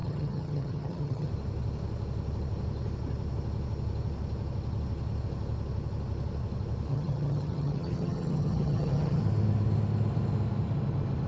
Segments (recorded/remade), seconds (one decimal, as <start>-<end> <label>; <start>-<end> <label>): 0.0-1.3 remade; 1.3-6.9 recorded; 6.9-9.2 remade; 9.2-11.3 recorded